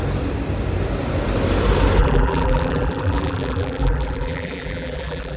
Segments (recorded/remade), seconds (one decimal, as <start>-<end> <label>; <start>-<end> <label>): 0.0-2.0 recorded; 2.0-5.4 remade